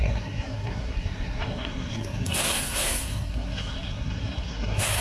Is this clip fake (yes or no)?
yes